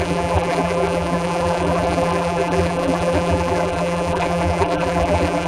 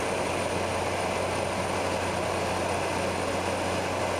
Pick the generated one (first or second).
first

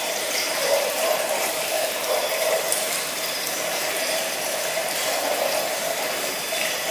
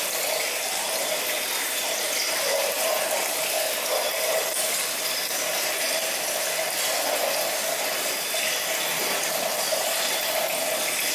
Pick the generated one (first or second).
first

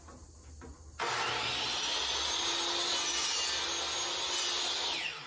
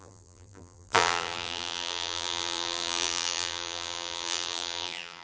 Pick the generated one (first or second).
second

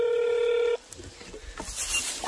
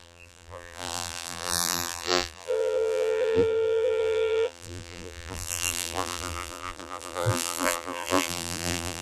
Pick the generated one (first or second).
second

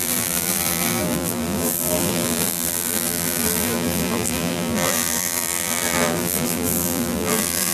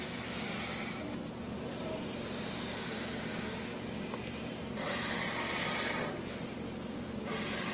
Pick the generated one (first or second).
first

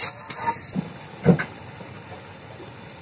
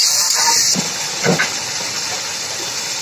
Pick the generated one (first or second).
second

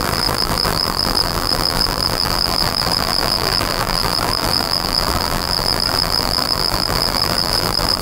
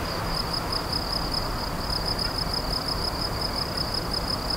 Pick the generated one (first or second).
first